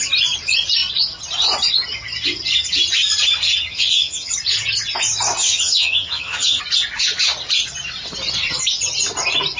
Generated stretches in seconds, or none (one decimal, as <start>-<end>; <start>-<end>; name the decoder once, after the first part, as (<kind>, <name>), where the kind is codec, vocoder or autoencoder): 3.7-4.3 (vocoder, HiFi-GAN); 5.4-6.6